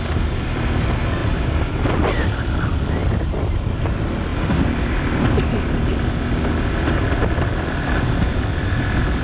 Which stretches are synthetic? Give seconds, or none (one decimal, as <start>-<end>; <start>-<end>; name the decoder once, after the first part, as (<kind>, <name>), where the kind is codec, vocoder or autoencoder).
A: 1.2-2.2 (vocoder, BigVGAN v2); 3.0-3.8